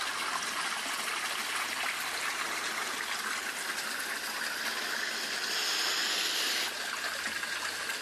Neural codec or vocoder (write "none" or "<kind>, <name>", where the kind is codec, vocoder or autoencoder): none